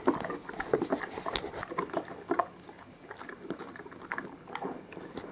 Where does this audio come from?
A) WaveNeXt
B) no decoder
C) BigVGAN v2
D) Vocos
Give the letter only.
B